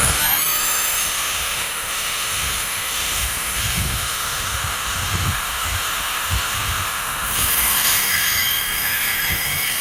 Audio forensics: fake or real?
fake